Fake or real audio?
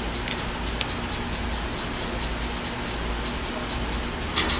real